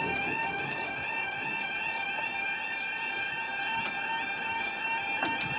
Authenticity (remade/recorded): recorded